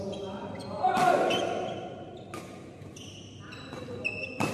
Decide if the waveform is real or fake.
real